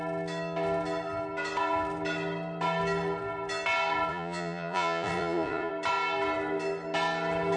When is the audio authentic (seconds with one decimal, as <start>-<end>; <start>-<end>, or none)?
0.0-4.1; 5.7-7.6